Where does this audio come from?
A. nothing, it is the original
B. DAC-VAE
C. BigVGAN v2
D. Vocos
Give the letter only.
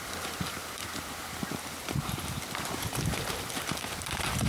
C